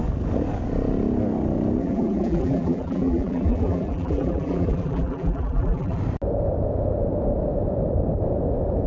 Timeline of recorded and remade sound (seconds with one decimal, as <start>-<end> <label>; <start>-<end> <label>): 0.0-1.8 recorded; 1.8-6.0 remade; 6.0-8.9 recorded